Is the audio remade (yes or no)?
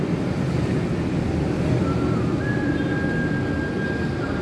no